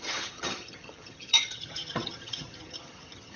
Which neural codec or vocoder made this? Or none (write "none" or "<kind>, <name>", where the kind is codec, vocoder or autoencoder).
vocoder, HiFi-GAN